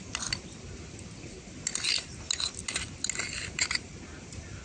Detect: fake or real real